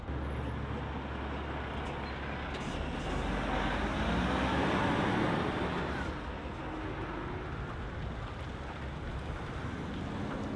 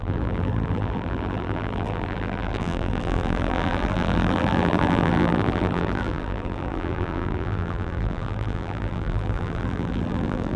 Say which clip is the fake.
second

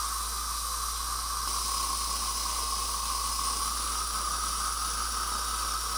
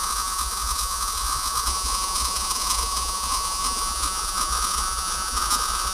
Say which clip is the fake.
second